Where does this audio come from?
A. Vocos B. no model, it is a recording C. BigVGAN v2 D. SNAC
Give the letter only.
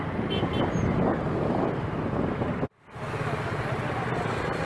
B